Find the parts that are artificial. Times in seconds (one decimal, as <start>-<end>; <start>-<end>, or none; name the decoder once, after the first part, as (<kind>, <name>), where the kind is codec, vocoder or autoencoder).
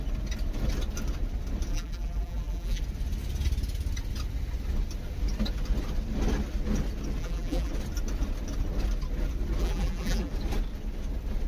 1.7-2.8 (vocoder, BigVGAN v2); 7.2-7.7; 9.6-10.3